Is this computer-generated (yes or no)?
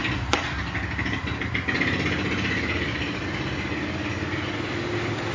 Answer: no